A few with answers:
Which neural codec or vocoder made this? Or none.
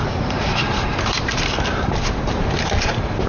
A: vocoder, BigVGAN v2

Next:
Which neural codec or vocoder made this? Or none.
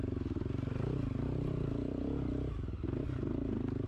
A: none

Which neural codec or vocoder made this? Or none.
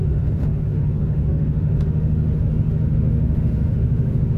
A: autoencoder, DAC-VAE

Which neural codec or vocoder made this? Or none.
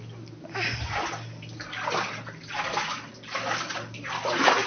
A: none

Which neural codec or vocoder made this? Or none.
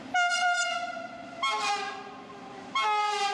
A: none